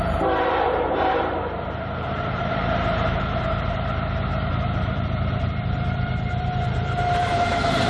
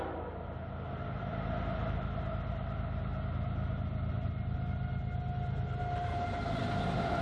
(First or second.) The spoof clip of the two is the first